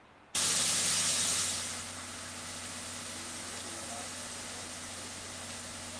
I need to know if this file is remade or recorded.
recorded